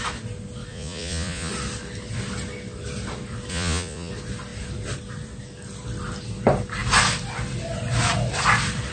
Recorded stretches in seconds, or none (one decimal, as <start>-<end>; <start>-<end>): 0.0-0.7; 1.5-3.5; 4.1-8.9